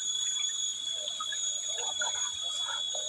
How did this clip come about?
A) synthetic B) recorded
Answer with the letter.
A